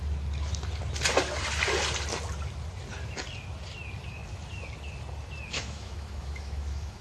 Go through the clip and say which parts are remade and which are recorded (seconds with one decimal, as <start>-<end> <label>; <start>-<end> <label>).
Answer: 0.0-5.5 recorded; 5.5-7.0 remade